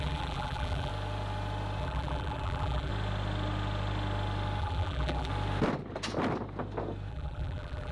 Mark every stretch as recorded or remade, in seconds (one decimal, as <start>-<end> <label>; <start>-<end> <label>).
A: 0.0-0.9 remade; 0.9-1.8 recorded; 1.8-2.9 remade; 2.9-4.6 recorded; 4.6-5.3 remade; 5.3-7.1 recorded; 7.1-7.9 remade